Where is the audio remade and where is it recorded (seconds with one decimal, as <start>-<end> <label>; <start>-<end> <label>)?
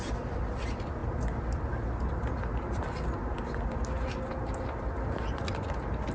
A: 0.0-6.1 recorded